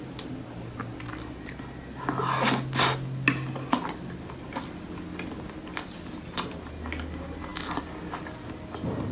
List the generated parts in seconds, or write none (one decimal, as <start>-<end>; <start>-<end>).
none